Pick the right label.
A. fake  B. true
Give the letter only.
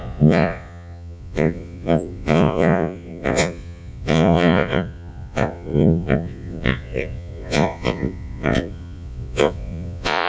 A